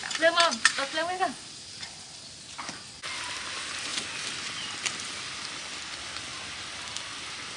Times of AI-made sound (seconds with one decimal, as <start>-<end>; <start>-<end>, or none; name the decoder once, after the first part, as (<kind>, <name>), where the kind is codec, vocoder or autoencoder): none